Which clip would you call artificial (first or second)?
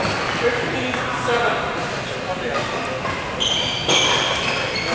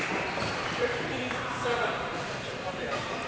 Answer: second